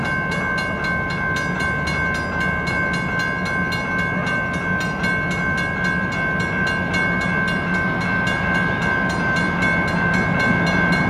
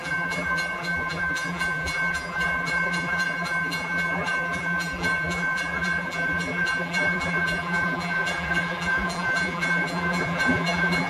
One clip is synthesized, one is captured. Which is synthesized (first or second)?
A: second